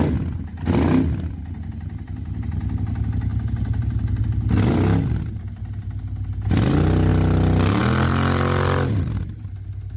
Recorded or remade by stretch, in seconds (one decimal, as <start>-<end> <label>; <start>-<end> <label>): 0.0-10.0 recorded